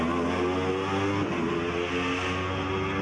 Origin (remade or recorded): recorded